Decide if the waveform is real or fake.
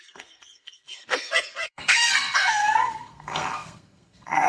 fake